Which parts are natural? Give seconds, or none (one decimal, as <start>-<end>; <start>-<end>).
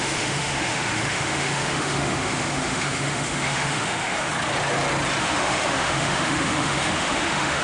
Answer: 4.3-5.2